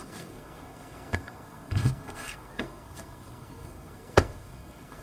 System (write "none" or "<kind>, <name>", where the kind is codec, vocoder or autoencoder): codec, SNAC